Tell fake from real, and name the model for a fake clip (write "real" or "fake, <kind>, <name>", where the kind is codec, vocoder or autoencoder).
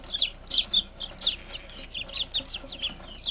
real